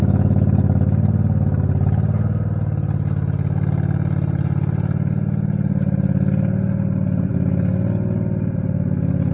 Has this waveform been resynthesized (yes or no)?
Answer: no